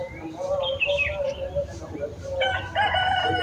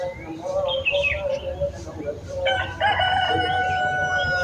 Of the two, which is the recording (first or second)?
second